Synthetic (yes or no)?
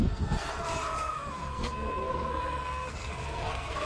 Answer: yes